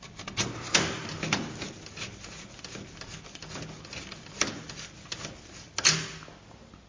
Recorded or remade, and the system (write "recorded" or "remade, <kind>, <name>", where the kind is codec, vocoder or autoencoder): recorded